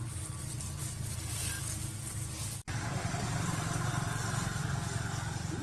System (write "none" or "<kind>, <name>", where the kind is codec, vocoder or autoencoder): none